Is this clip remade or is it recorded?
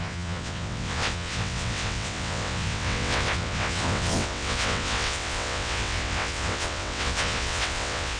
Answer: remade